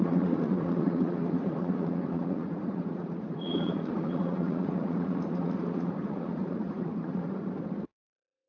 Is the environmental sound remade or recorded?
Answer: remade